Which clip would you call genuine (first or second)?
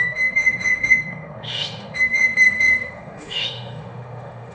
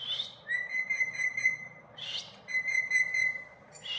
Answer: second